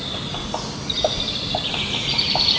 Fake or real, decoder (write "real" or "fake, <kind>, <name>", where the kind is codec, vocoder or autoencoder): real